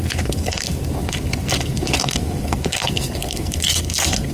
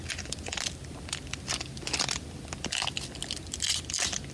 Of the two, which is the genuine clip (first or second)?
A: second